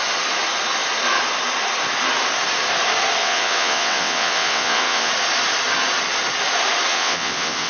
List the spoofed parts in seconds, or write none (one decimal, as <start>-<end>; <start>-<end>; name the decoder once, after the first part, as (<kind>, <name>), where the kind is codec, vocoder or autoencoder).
3.2-5.1 (vocoder, WaveNeXt); 6.9-7.7